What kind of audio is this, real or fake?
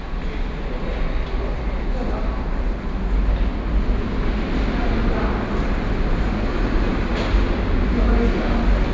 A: real